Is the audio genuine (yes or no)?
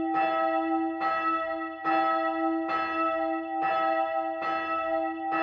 yes